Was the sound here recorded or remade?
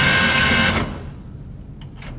recorded